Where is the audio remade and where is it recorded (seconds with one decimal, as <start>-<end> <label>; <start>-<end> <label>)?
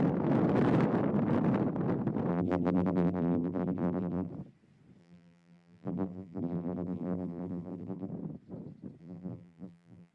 0.0-2.3 recorded; 2.3-4.3 remade; 4.3-5.0 recorded; 5.0-8.1 remade; 8.1-9.0 recorded; 9.0-10.1 remade